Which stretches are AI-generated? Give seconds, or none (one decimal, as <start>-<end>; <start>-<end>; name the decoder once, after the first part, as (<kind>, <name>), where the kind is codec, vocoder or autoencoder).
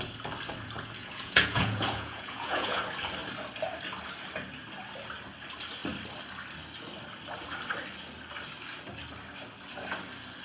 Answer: 1.0-2.8 (vocoder, Vocos)